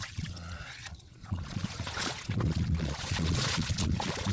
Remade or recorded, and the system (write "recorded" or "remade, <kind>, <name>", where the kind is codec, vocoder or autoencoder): remade, vocoder, Vocos